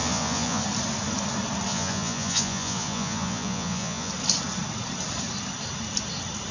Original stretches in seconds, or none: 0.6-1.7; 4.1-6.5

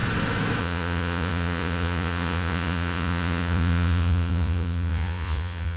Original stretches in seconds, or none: 0.0-0.6

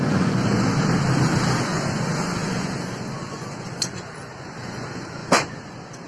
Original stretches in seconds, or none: 0.7-1.6